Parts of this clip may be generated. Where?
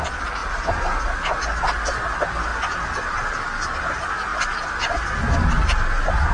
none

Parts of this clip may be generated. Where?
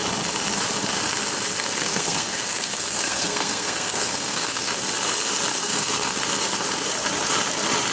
1.8-4.7 (codec, SNAC); 5.5-6.2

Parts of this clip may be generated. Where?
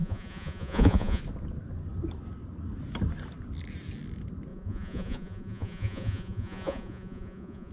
0.0-1.2 (vocoder, Vocos); 4.5-7.7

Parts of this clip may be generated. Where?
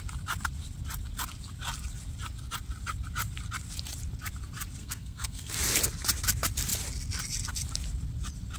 4.8-5.5 (codec, SNAC)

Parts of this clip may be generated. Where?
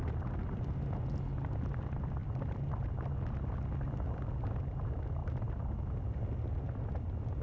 2.2-2.9 (vocoder, BigVGAN v2); 5.2-6.2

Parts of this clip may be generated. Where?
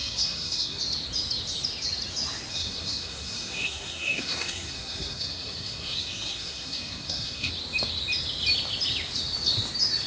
0.0-0.8 (codec, SNAC); 2.5-7.5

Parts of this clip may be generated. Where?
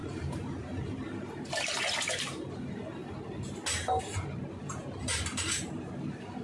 0.0-3.0 (vocoder, BigVGAN v2); 4.0-6.4